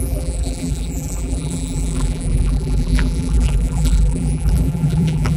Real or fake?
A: fake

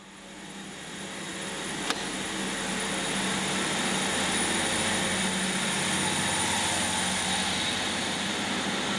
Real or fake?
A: real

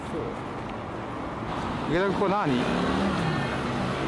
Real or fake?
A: real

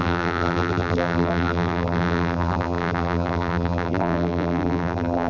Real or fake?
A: fake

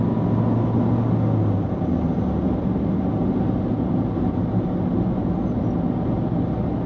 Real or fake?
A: real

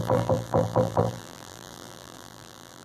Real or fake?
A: fake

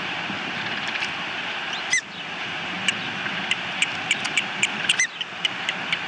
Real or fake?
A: real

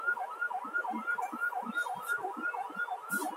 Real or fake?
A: real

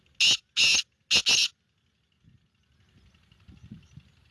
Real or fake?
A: real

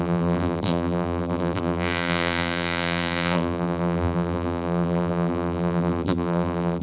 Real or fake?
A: fake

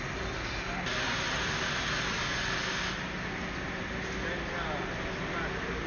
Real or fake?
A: real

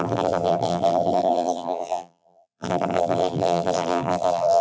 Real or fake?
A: fake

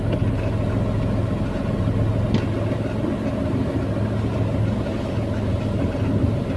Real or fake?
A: real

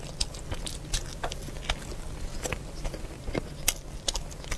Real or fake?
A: real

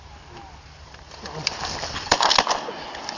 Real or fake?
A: real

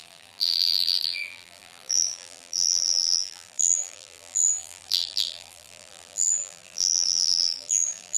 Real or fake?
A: fake